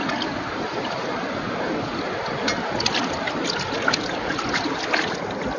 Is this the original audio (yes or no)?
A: yes